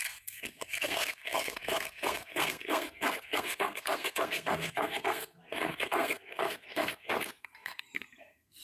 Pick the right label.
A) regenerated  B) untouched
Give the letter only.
A